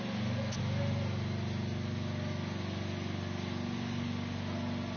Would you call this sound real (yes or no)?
yes